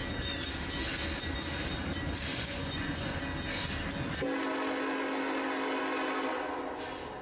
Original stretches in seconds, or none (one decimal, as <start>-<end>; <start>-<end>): 0.0-2.3; 3.2-7.2